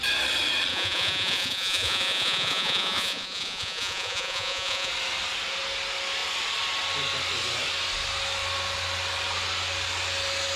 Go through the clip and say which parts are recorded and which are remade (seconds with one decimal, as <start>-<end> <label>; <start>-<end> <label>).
0.0-0.7 recorded; 0.7-4.9 remade; 4.9-10.6 recorded